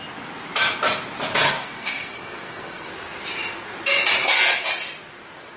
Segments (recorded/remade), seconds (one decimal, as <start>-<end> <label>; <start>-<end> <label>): 0.0-1.6 recorded; 1.6-2.9 remade; 2.9-5.6 recorded